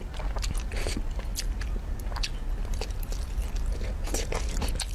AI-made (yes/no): no